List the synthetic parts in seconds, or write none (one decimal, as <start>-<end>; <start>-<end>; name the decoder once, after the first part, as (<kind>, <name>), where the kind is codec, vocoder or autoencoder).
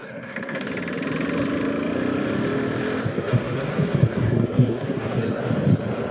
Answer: 0.0-0.7 (codec, SNAC); 3.1-5.4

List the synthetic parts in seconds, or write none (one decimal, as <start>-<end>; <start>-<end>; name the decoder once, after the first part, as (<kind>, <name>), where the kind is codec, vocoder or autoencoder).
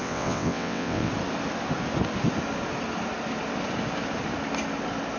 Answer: 0.0-1.1 (vocoder, WaveNeXt)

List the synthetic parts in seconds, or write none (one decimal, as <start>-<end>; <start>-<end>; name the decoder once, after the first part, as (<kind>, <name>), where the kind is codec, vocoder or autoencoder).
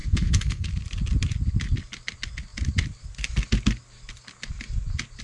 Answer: 0.0-0.7 (codec, SNAC)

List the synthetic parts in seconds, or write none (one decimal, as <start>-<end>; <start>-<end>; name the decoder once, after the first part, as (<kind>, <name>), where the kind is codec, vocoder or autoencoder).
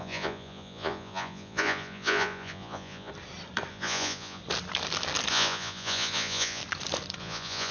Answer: 0.0-3.1 (vocoder, Vocos); 3.7-4.4; 5.3-6.6; 7.2-7.7